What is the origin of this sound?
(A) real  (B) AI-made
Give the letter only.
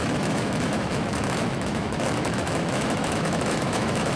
B